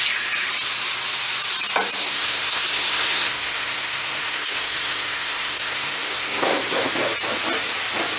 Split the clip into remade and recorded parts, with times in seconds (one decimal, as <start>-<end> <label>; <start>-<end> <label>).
0.0-2.0 recorded; 2.0-6.9 remade; 6.9-8.2 recorded